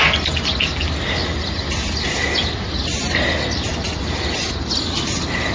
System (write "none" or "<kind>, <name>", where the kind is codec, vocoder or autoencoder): none